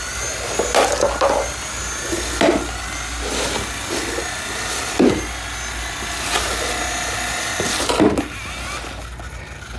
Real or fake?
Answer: real